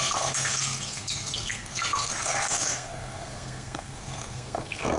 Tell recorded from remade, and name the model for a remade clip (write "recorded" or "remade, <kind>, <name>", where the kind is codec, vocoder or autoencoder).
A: remade, codec, SNAC